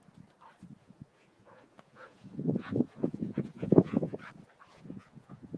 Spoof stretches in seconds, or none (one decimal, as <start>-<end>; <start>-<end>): 0.8-4.2; 4.7-5.6